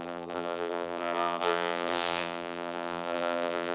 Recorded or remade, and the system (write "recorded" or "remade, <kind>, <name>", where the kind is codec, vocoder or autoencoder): remade, vocoder, BigVGAN v2